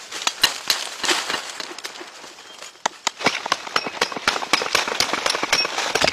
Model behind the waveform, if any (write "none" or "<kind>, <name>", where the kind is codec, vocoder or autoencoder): none